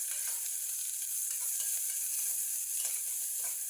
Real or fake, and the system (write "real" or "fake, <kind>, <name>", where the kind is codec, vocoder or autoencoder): real